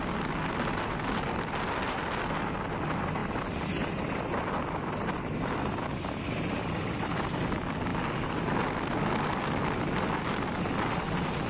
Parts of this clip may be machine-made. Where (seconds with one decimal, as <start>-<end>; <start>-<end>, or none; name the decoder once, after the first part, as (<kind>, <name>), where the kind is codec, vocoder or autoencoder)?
none